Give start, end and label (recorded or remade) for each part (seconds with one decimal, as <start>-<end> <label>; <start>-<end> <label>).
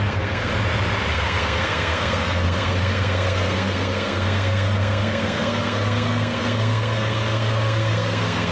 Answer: 0.0-0.5 remade; 0.5-1.1 recorded; 1.1-8.5 remade